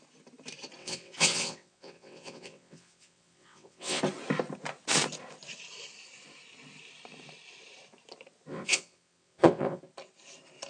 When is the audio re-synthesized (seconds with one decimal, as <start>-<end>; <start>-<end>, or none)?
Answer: 0.8-4.0; 8.5-9.8